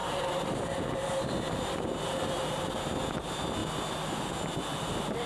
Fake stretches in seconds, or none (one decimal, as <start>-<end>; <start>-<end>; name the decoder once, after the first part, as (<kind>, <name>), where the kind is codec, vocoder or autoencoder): none